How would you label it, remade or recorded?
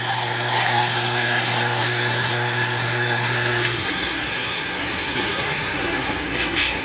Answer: remade